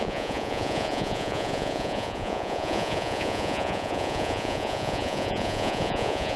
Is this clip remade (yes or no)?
yes